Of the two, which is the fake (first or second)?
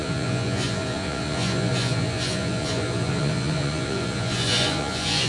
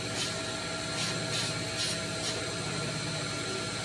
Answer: first